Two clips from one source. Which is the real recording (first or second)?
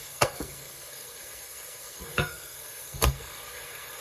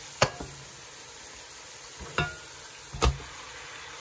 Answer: second